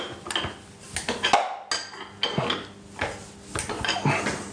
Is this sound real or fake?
real